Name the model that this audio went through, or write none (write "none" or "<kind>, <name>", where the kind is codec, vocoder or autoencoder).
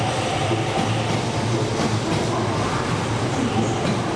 none